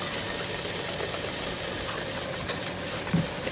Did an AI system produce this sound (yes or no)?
no